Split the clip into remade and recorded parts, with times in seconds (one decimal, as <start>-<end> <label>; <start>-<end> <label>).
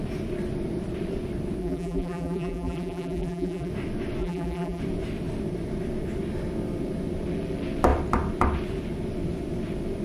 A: 0.0-1.6 recorded; 1.6-3.7 remade; 3.7-4.2 recorded; 4.2-4.8 remade; 4.8-10.0 recorded